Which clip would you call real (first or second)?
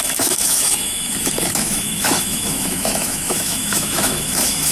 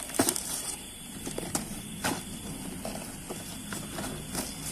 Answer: second